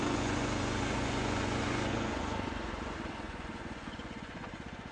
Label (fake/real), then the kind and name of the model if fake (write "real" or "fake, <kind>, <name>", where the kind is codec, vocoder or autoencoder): fake, vocoder, Vocos